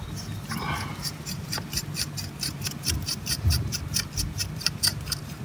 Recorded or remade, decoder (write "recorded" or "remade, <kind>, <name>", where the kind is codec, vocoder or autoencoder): remade, vocoder, BigVGAN v2